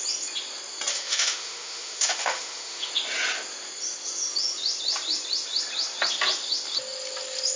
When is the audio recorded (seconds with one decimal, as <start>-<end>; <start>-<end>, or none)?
0.0-0.9; 2.9-7.6